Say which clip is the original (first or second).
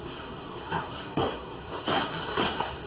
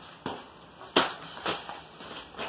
second